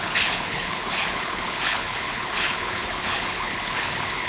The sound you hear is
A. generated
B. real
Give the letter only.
A